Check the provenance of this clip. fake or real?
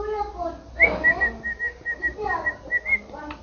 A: real